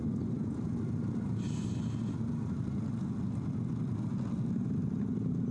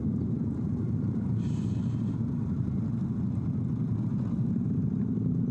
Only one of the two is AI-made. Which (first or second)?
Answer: second